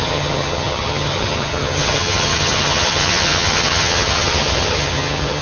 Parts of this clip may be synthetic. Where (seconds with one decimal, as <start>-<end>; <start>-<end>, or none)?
0.0-5.4